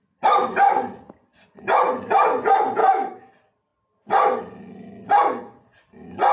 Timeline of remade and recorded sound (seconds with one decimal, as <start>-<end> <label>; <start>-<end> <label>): 0.0-2.8 recorded; 2.8-3.3 remade; 3.3-6.3 recorded